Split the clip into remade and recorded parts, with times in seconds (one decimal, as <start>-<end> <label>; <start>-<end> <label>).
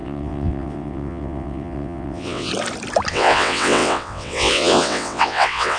0.0-2.5 remade; 2.5-3.1 recorded; 3.1-5.8 remade